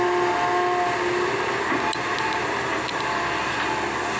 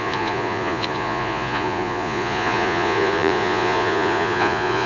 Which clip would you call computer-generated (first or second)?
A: second